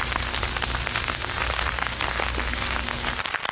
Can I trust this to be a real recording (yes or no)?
yes